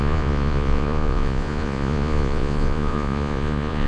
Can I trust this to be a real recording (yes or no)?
no